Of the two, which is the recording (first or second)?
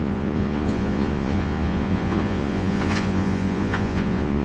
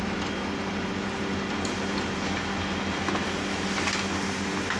second